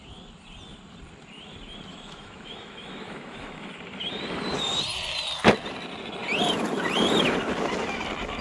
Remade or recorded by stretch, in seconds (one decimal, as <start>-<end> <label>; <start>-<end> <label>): 0.0-1.9 recorded; 1.9-3.7 remade; 3.7-8.4 recorded

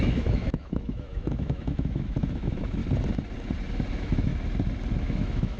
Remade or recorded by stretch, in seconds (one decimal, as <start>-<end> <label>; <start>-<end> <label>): 0.0-2.8 remade; 2.8-3.9 recorded; 3.9-4.3 remade; 4.3-5.0 recorded; 5.0-5.6 remade

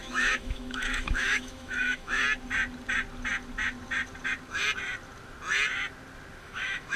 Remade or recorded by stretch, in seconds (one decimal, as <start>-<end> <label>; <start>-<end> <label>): 0.0-2.2 remade; 2.2-6.4 recorded; 6.4-7.0 remade

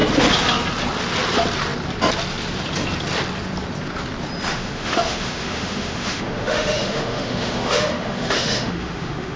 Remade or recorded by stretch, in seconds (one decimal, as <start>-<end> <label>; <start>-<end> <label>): 0.0-4.5 recorded; 4.5-9.4 remade

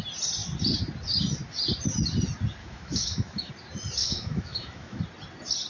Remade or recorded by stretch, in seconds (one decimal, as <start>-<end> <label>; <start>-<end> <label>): 0.0-2.6 recorded; 2.6-3.5 remade; 3.5-4.0 recorded; 4.0-5.0 remade; 5.0-5.7 recorded